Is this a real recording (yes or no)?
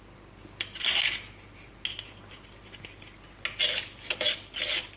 yes